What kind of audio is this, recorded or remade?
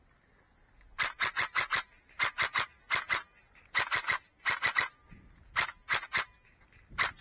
recorded